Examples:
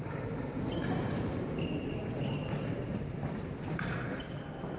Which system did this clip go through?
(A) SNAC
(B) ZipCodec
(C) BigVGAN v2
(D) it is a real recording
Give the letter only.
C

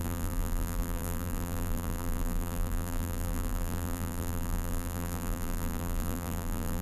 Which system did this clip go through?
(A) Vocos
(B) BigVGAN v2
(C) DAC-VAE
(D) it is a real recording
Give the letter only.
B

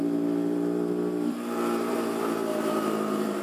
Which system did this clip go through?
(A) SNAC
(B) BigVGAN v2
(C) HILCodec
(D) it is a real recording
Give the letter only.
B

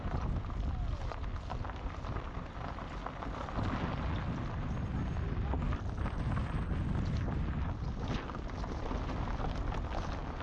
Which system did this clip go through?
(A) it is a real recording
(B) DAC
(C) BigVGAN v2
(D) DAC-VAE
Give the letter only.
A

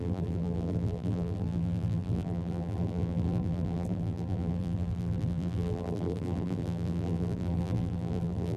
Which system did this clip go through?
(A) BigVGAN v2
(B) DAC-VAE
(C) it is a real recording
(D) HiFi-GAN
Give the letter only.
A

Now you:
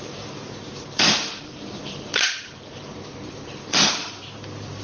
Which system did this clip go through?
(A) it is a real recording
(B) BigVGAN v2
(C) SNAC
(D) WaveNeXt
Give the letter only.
B